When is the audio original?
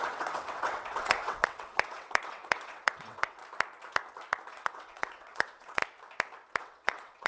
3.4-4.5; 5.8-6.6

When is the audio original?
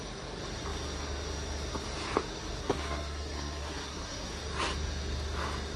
0.0-2.6; 4.3-5.8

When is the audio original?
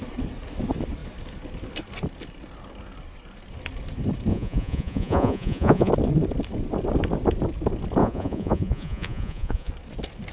0.0-4.3; 5.9-8.0; 9.7-10.3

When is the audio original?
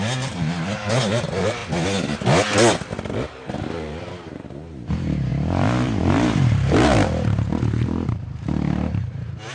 1.6-3.3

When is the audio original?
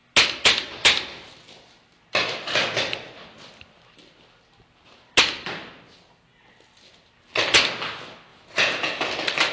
0.0-8.3; 8.9-9.5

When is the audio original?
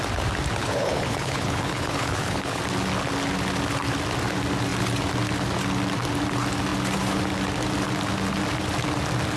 0.0-0.6; 2.6-9.4